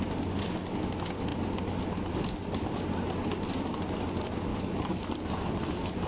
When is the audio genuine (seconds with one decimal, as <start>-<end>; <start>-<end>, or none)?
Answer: 0.0-4.5; 5.1-6.1

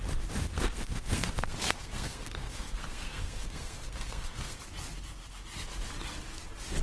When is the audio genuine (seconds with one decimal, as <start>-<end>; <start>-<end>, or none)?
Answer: 0.0-0.5; 4.6-6.8

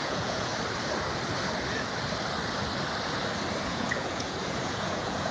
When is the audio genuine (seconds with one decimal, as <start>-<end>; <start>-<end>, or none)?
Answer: 0.5-3.7

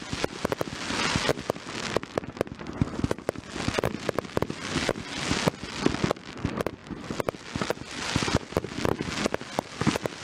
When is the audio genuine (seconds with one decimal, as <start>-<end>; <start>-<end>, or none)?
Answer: 0.0-10.2